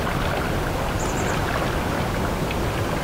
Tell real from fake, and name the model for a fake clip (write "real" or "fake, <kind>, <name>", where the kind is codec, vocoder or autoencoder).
fake, vocoder, BigVGAN v2